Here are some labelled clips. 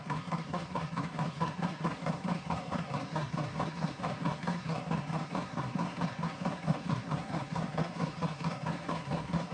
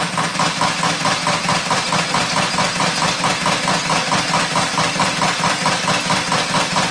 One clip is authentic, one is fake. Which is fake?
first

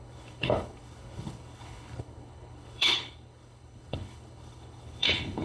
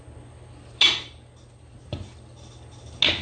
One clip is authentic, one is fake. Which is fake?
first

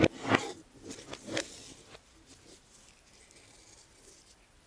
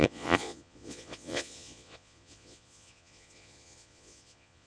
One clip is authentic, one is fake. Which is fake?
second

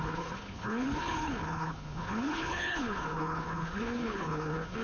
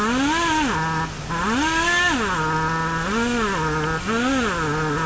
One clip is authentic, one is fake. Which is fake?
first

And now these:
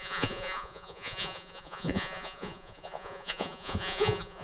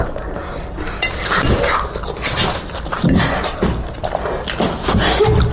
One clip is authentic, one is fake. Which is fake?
first